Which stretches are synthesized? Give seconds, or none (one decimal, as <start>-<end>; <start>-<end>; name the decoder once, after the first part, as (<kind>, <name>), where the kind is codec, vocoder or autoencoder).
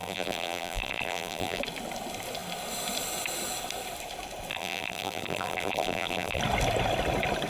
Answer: 0.0-1.6 (vocoder, BigVGAN v2); 4.5-6.4